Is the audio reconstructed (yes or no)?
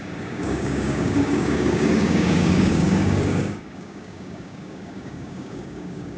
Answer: yes